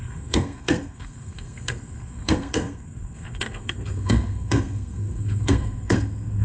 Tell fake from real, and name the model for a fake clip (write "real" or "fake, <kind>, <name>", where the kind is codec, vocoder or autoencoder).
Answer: fake, codec, SNAC